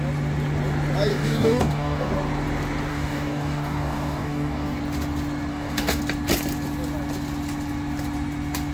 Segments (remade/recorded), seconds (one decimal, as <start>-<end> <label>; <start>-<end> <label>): 0.0-1.1 recorded; 1.1-2.1 remade; 2.1-2.9 recorded; 2.9-4.8 remade; 4.8-5.5 recorded; 5.5-6.0 remade; 6.0-8.7 recorded